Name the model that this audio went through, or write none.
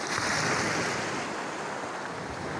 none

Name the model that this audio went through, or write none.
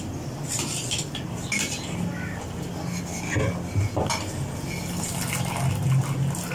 none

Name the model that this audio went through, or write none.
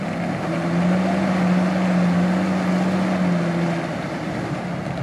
none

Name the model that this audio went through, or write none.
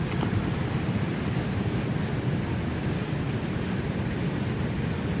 none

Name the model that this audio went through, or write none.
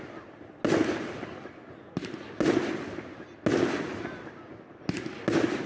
none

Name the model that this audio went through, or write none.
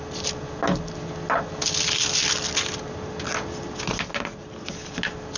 none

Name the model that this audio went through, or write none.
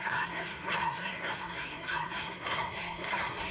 codec, SNAC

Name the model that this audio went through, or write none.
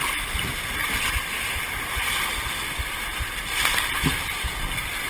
none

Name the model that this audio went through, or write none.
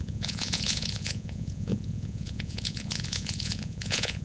vocoder, Vocos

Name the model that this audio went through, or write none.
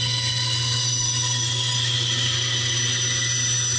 none